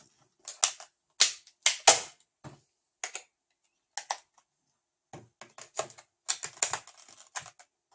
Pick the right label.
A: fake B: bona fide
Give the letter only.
B